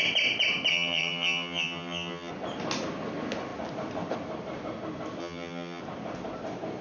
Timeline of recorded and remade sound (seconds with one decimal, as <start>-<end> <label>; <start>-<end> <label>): 0.0-0.7 recorded; 0.7-2.3 remade; 2.3-5.2 recorded; 5.2-5.8 remade; 5.8-6.8 recorded